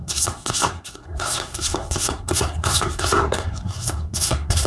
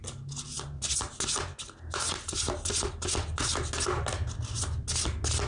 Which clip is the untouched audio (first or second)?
second